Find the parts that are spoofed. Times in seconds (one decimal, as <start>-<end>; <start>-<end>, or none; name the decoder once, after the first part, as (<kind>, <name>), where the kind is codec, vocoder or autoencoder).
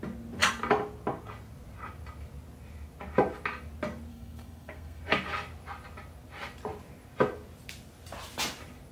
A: 4.1-5.0 (codec, SNAC)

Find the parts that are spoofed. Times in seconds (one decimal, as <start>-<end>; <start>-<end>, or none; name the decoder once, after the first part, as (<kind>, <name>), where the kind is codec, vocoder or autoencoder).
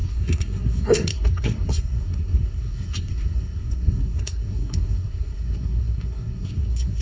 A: 0.0-7.0 (codec, SNAC)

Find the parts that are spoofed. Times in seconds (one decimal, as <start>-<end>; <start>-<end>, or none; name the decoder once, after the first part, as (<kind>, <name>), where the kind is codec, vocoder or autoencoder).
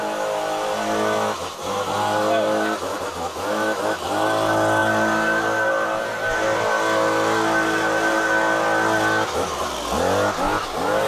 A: none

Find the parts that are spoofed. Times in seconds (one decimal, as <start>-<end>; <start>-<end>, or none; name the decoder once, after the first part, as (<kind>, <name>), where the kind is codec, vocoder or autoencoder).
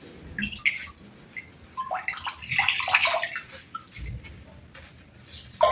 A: none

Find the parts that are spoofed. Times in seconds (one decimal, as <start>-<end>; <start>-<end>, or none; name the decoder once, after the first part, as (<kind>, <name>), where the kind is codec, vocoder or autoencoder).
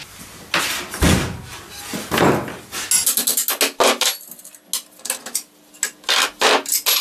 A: none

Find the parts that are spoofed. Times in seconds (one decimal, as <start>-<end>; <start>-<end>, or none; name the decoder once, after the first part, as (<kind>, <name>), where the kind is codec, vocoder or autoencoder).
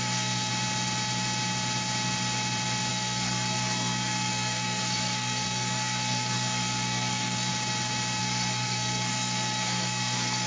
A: 0.0-0.5 (codec, SNAC); 2.9-7.5; 8.2-10.5